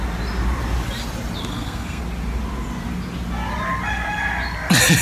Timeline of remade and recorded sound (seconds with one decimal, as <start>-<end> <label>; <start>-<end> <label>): 0.0-1.5 recorded; 1.5-2.0 remade; 2.0-5.0 recorded